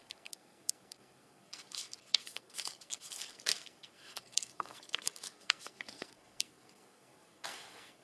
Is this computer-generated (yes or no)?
yes